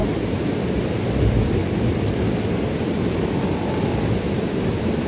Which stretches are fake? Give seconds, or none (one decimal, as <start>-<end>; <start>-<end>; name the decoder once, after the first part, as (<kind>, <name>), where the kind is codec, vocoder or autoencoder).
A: none